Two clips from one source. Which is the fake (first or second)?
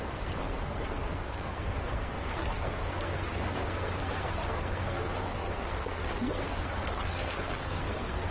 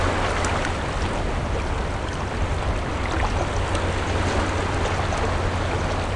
first